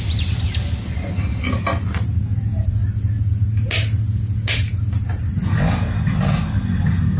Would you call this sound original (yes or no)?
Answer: yes